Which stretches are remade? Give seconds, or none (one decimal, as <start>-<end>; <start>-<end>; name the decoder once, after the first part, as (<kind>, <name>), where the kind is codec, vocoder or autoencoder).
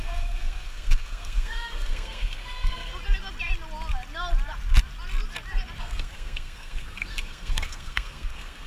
0.0-2.9 (codec, SNAC); 5.8-8.7